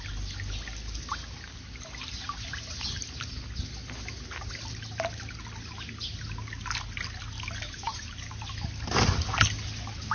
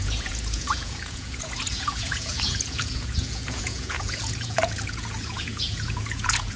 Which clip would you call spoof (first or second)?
second